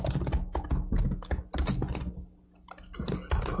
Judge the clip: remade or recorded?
recorded